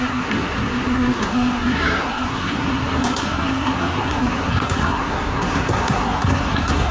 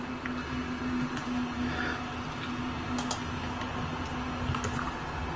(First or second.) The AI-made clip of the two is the first